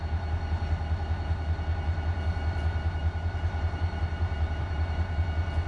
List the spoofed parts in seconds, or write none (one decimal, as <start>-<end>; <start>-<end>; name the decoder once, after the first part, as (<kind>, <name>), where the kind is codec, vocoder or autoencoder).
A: 3.0-5.2 (vocoder, BigVGAN v2)